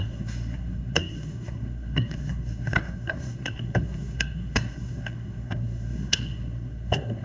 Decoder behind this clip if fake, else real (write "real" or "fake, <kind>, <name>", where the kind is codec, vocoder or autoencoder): fake, codec, SNAC